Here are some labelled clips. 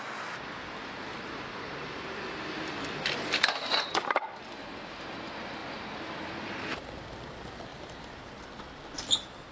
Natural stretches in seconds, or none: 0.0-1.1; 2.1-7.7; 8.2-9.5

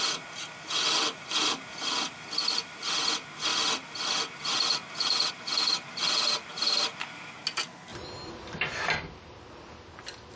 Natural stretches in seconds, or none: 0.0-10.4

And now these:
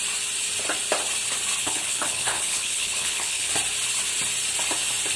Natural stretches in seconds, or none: 0.0-1.6; 3.5-5.2

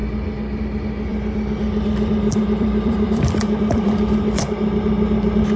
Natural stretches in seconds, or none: 0.0-1.1; 4.4-5.6